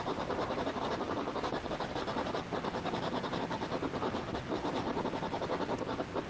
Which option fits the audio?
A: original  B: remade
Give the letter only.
A